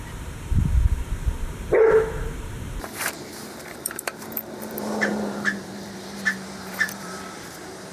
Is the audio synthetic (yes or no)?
yes